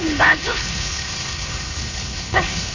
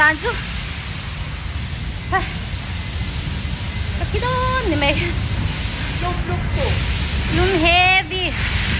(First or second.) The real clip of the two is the second